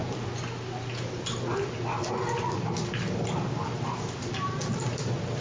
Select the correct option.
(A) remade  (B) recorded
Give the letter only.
B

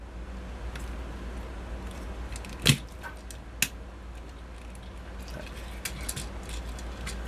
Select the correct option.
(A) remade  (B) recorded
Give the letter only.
B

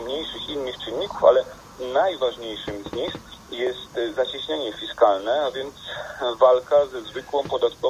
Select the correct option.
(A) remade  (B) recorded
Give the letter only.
B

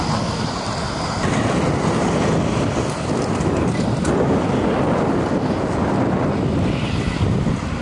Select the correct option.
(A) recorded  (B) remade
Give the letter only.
A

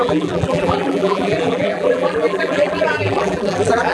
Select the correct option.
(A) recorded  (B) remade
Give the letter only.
B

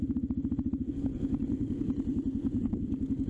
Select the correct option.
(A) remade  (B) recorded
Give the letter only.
B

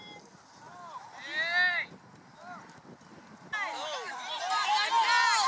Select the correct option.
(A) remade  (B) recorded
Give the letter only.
B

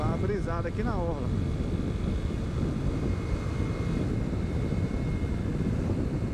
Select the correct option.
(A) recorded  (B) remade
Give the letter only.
A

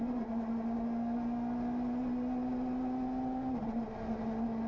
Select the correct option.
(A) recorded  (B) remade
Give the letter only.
A